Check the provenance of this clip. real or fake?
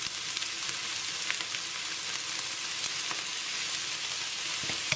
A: real